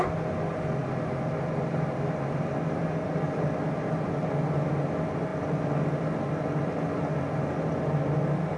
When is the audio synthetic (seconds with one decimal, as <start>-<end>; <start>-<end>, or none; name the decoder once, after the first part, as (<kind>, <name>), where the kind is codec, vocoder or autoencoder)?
none